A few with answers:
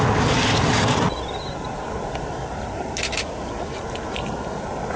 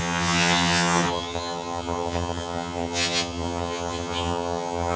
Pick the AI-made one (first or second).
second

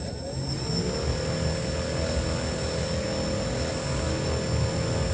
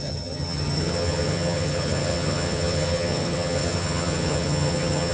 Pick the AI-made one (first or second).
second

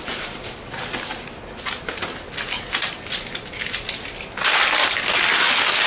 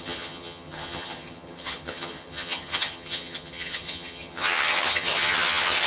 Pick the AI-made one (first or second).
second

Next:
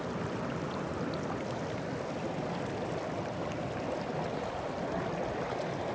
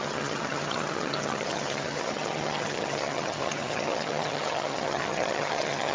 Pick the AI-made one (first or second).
second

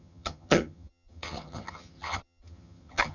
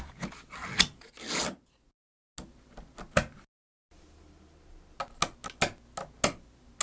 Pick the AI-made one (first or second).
first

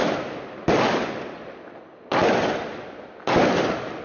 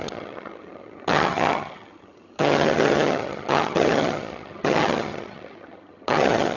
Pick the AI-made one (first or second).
second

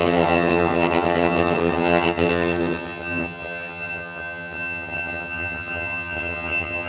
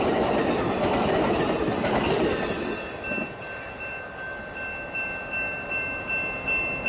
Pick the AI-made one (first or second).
first